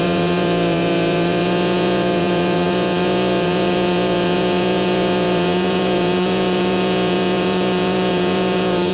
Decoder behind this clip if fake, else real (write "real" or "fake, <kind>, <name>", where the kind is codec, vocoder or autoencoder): fake, vocoder, Vocos